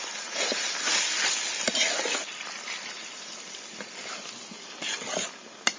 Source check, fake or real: real